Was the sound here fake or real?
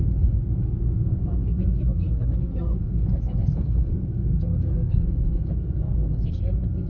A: fake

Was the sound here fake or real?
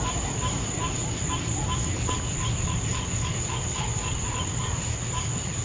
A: real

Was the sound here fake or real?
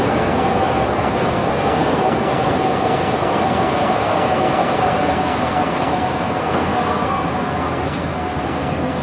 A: fake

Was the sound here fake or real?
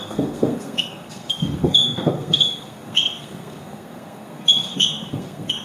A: fake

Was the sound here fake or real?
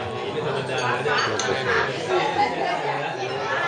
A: real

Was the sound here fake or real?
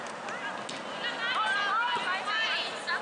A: real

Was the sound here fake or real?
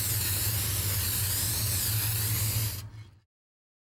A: real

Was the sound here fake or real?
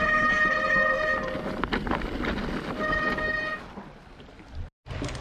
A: real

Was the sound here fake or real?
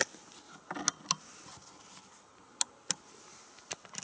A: real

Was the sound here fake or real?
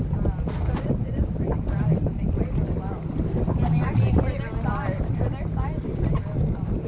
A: real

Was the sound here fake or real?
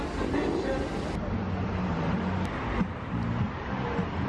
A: real